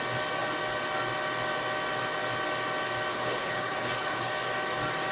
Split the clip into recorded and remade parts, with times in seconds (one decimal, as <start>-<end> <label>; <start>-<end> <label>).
0.0-3.1 recorded; 3.1-4.3 remade; 4.3-5.1 recorded